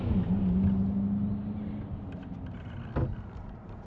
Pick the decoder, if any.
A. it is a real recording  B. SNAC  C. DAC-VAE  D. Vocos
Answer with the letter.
A